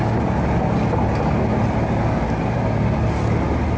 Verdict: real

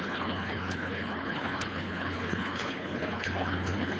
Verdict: fake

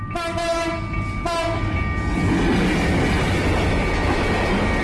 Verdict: real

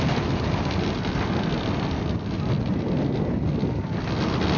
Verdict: real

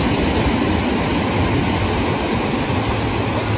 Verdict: real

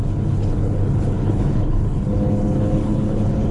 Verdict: fake